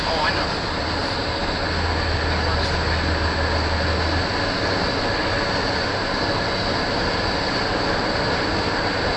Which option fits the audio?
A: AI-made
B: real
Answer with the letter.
B